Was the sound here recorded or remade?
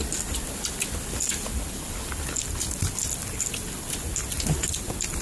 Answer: recorded